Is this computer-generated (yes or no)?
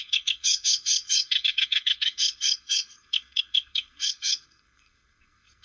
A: yes